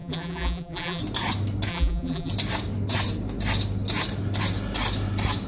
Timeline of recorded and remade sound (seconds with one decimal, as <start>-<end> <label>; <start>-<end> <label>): 0.0-1.0 remade; 1.0-1.7 recorded; 1.7-2.3 remade; 2.3-5.5 recorded

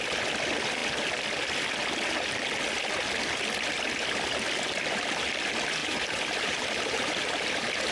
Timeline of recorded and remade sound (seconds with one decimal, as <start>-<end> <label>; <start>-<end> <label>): 0.0-5.8 recorded; 5.8-7.5 remade; 7.5-7.9 recorded